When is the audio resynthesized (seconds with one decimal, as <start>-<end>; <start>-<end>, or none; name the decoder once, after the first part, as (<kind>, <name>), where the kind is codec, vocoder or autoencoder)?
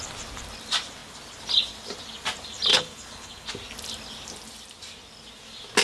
2.7-3.5 (codec, HILCodec)